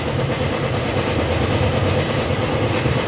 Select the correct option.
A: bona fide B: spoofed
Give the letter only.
A